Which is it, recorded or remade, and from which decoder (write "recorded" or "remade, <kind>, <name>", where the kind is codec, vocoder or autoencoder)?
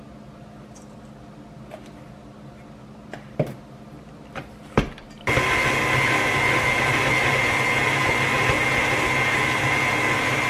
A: recorded